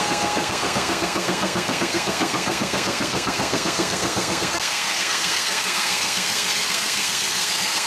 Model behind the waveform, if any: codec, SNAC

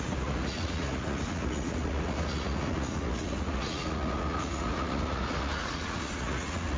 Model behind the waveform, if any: vocoder, Vocos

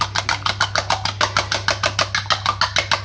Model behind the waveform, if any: none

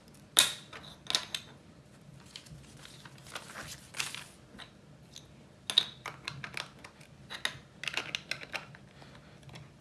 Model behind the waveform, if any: none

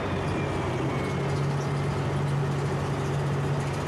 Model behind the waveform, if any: none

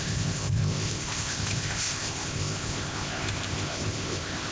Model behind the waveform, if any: codec, ZipCodec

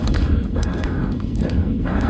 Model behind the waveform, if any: codec, SNAC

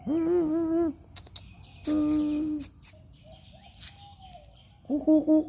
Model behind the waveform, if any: none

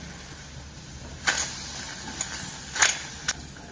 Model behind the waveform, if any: none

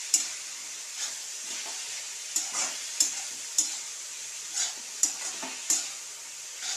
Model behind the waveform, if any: none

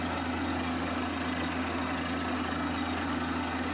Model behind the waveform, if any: none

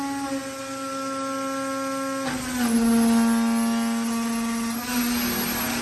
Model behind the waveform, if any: none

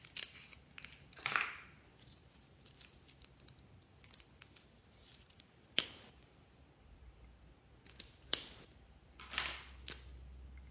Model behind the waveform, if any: none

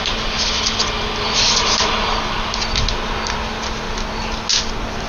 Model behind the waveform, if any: none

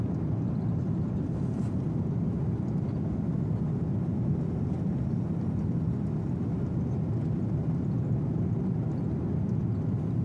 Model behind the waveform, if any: none